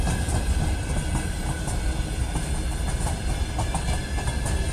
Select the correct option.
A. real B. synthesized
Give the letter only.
A